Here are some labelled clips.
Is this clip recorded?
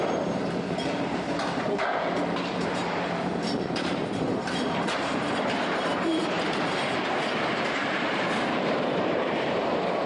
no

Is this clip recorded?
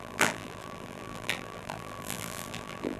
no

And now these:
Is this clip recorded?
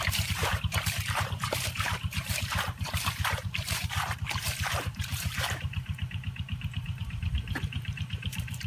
no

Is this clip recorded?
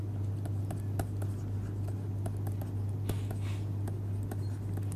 yes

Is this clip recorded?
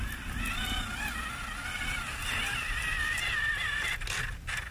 yes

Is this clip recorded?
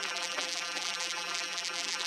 no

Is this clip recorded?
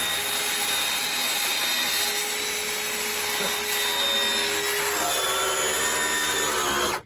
yes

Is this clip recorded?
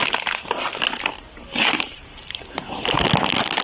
yes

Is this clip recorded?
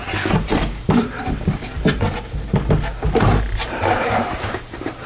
no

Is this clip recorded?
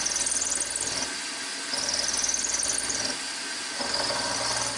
yes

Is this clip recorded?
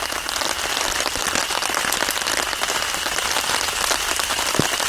yes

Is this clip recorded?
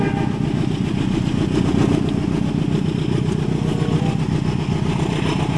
yes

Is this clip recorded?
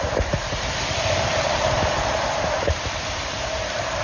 no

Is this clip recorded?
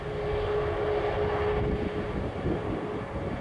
yes